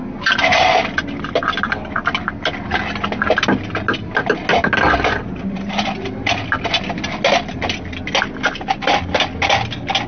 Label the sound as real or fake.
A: real